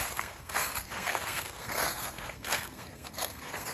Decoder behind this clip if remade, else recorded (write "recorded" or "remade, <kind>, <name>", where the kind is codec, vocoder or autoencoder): remade, codec, SNAC